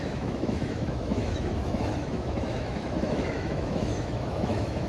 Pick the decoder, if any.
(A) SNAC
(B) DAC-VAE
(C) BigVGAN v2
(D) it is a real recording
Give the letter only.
B